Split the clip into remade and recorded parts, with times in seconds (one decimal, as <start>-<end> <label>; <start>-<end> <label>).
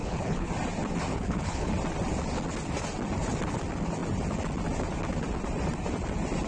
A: 0.0-0.5 remade; 0.5-1.1 recorded; 1.1-1.7 remade; 1.7-6.5 recorded